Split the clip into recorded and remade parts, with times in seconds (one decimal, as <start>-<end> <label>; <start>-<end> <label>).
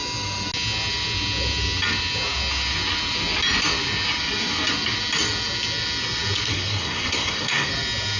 0.0-6.5 recorded; 6.5-7.7 remade; 7.7-8.2 recorded